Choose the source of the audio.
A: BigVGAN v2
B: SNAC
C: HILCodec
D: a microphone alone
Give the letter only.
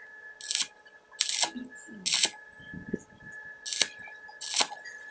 D